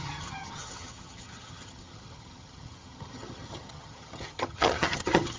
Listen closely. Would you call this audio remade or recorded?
remade